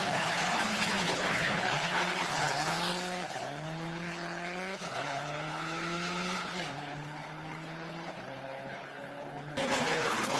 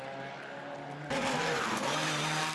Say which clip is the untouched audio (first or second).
second